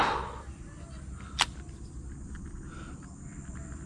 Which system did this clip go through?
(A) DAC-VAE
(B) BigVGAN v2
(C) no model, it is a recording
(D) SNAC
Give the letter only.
C